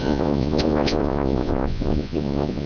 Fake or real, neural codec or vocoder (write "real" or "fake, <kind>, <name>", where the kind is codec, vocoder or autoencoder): fake, vocoder, Vocos